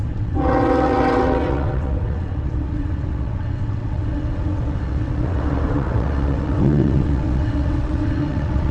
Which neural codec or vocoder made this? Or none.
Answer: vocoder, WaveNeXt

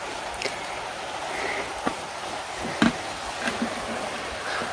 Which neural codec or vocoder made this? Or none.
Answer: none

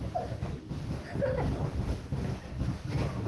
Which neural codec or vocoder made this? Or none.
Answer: none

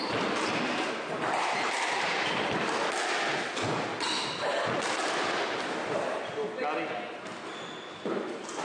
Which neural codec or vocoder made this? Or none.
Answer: none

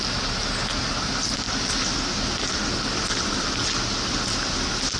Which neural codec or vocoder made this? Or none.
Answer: none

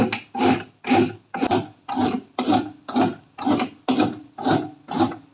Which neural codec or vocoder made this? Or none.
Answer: none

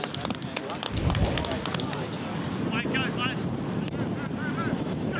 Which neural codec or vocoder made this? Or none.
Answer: none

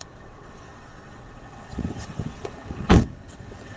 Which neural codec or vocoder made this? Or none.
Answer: vocoder, WaveNeXt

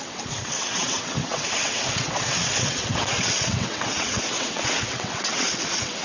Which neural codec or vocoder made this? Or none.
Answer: vocoder, WaveNeXt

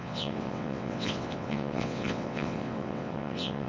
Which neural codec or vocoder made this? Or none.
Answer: vocoder, WaveNeXt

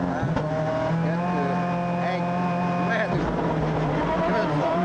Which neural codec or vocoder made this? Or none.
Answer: none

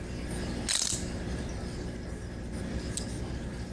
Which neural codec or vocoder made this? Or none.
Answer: none